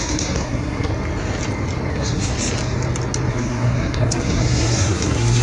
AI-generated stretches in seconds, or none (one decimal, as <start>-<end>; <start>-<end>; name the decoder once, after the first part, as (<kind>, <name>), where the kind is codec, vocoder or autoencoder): 0.0-0.9 (codec, SNAC); 1.9-2.3; 3.3-5.4